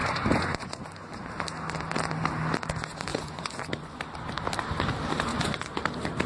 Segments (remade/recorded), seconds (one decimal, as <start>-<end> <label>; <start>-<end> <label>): 0.0-0.8 remade; 0.8-3.1 recorded; 3.1-4.0 remade; 4.0-5.3 recorded; 5.3-5.8 remade; 5.8-6.3 recorded